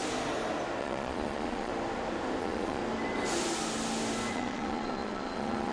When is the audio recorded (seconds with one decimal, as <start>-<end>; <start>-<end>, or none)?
0.0-0.8; 1.7-2.4; 2.8-4.3